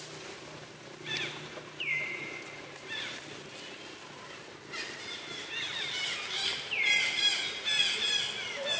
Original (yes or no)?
yes